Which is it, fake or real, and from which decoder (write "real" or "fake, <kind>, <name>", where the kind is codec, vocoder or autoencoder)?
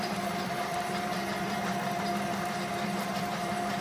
fake, vocoder, BigVGAN v2